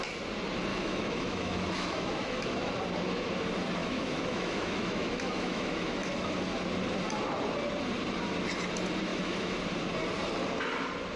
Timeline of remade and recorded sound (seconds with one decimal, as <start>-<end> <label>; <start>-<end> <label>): 0.0-0.7 recorded; 0.7-2.7 remade; 2.7-3.8 recorded; 3.8-6.4 remade; 6.4-9.1 recorded; 9.1-9.6 remade; 9.6-11.2 recorded

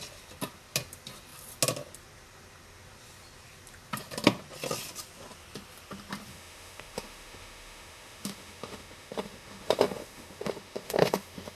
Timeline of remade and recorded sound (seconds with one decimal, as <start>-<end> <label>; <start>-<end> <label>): 0.0-6.3 recorded; 6.3-11.6 remade

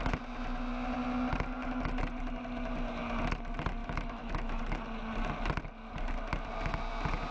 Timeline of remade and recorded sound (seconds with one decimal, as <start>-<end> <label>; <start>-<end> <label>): 0.0-3.8 recorded; 3.8-4.6 remade; 4.6-7.3 recorded

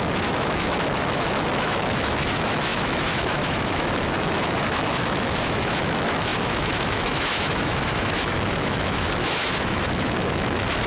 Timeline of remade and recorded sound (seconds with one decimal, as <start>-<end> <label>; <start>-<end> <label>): 0.0-10.9 remade